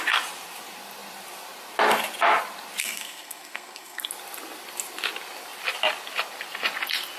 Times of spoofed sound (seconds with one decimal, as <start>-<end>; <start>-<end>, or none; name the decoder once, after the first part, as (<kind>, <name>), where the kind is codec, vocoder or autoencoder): 2.8-4.1 (codec, SNAC)